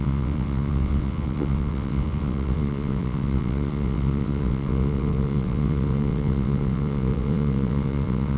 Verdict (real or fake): fake